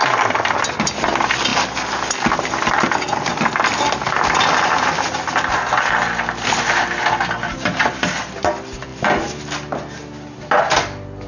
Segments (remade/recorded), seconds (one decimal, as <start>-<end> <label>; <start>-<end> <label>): 0.0-11.3 recorded

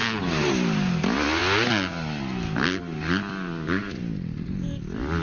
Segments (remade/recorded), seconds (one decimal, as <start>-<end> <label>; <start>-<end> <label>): 0.0-5.2 recorded